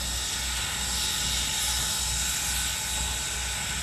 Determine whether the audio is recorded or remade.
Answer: recorded